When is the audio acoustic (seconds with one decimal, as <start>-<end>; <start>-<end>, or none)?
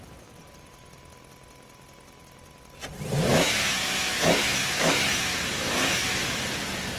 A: 0.0-3.3; 6.4-7.0